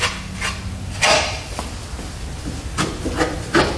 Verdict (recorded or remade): recorded